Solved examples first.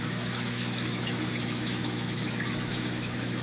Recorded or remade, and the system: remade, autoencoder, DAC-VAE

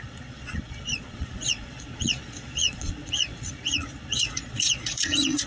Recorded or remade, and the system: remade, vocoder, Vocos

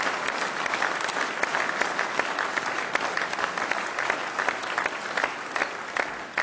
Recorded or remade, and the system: recorded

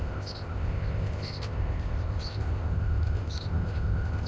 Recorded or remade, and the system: remade, codec, ZipCodec